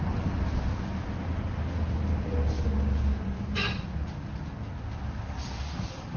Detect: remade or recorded recorded